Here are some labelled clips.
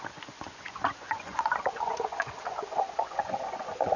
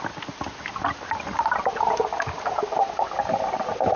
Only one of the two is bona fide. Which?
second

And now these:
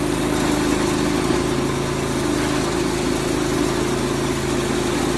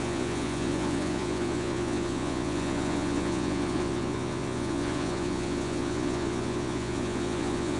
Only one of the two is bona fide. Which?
first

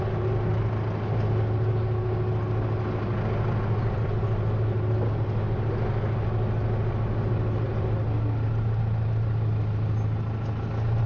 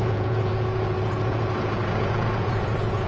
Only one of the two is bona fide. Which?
first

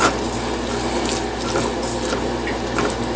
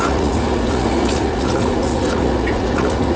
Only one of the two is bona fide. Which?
first